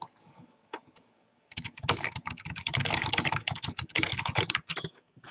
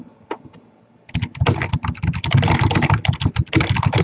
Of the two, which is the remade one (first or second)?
first